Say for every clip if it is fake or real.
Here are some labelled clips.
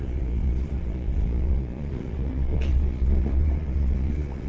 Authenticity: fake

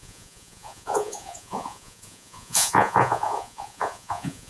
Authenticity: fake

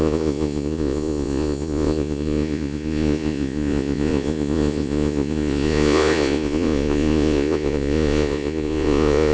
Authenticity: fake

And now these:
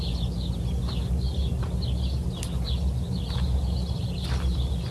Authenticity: real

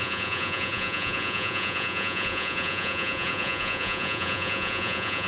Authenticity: fake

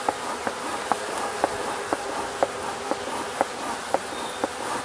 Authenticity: real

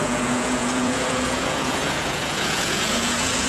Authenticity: fake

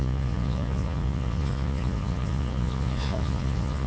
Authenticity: fake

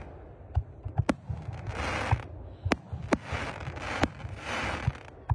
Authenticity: real